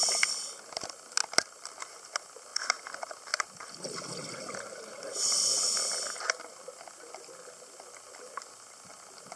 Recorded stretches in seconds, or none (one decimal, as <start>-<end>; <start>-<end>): 0.0-9.4